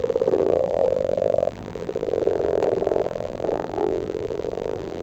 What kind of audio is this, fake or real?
fake